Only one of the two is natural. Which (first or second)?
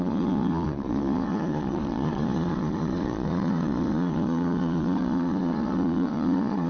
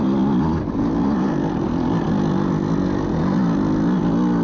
second